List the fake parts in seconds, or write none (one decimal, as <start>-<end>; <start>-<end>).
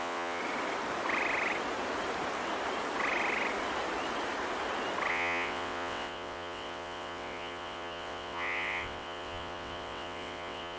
0.0-0.4; 5.1-10.8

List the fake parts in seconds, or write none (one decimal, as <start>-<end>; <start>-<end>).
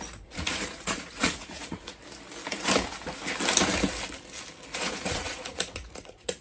0.0-2.0; 4.7-6.4